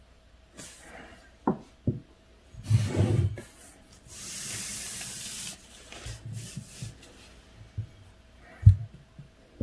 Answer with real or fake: real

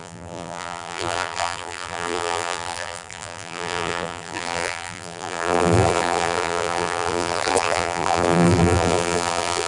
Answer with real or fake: fake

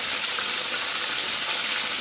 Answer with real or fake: real